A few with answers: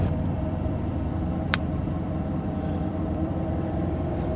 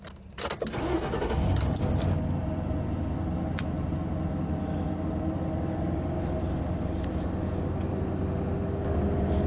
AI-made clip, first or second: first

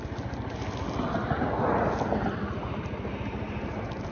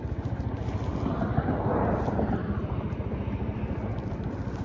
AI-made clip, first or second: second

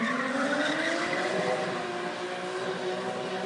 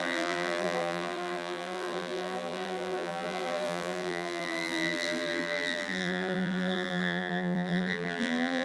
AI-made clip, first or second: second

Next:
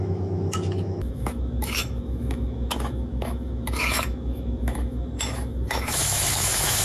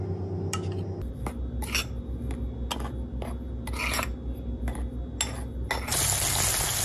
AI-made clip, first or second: first